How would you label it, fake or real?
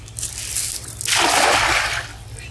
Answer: real